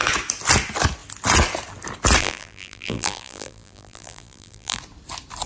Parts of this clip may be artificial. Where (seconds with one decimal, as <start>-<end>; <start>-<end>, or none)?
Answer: 2.2-4.8